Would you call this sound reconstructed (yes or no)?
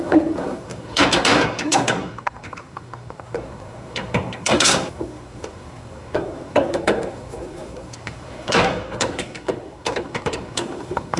yes